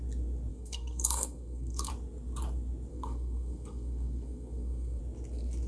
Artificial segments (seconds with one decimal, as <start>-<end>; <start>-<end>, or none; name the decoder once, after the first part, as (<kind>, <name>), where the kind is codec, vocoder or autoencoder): 0.5-1.9 (codec, SNAC); 2.9-5.0